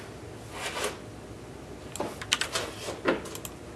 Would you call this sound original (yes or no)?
yes